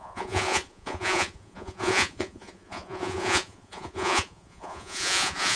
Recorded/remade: remade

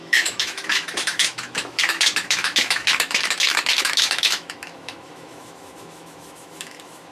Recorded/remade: remade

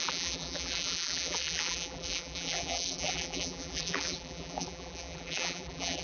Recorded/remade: remade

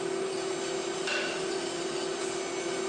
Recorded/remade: recorded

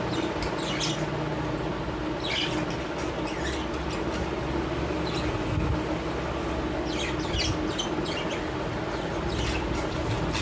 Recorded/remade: recorded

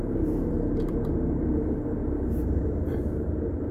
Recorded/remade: remade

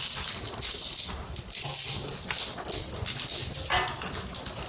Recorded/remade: recorded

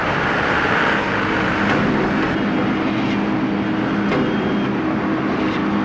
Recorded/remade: recorded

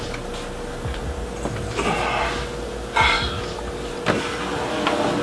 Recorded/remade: recorded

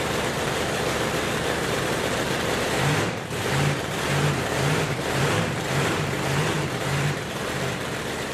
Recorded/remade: remade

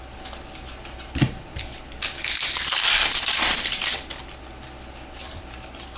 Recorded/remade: recorded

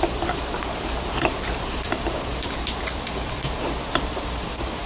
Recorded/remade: remade